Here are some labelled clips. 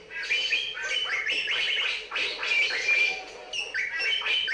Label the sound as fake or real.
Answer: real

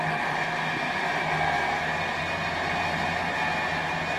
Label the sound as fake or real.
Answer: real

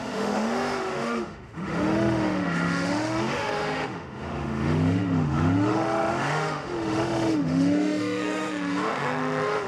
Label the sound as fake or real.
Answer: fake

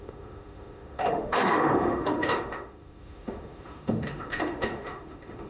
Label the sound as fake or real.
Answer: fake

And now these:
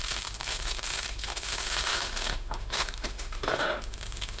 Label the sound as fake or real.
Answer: fake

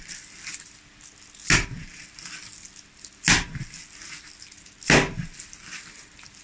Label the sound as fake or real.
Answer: real